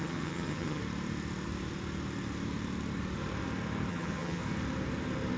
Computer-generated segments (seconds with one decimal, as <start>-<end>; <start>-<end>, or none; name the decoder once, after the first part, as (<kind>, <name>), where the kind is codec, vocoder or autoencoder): 0.0-0.8 (vocoder, HiFi-GAN); 3.9-4.4